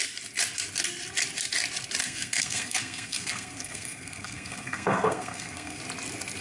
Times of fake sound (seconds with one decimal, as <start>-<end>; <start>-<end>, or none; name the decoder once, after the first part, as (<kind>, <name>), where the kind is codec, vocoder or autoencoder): 2.0-5.8 (codec, SNAC)